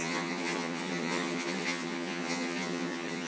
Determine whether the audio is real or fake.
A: fake